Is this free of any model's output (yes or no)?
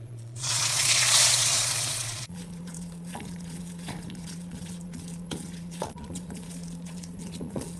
no